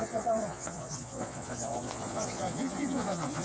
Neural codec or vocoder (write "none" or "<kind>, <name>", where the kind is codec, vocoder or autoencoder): vocoder, Vocos